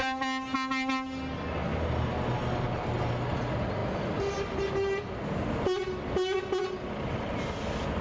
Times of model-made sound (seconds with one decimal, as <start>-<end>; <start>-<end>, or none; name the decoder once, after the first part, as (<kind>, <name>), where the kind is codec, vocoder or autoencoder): none